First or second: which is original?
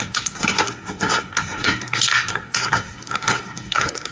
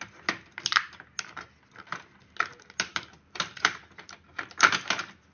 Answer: second